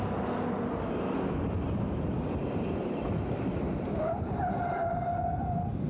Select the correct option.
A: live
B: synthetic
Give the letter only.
A